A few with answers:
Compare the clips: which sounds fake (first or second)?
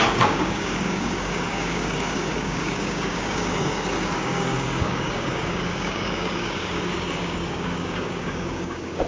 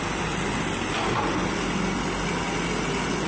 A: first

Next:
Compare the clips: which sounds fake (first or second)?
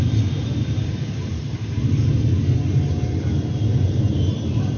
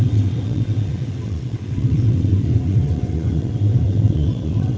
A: second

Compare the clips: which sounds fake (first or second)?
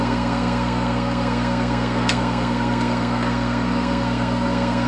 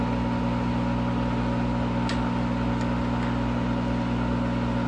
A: first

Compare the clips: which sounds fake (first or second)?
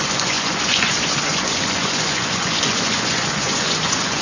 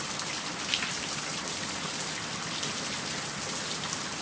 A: first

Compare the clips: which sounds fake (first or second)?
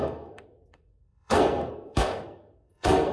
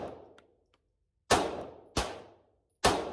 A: first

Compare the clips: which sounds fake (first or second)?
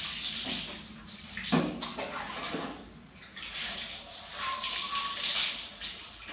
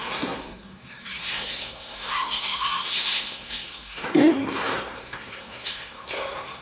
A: second